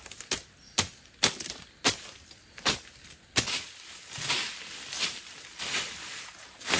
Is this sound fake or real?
real